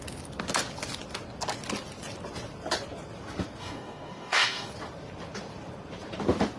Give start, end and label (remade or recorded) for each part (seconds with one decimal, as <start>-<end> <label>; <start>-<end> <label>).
0.0-3.6 recorded; 3.6-4.7 remade; 4.7-6.6 recorded